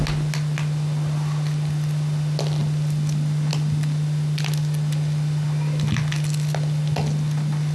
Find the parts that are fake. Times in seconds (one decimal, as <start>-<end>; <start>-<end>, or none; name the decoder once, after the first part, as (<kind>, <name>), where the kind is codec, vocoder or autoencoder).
none